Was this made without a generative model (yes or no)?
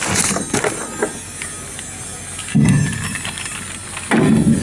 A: yes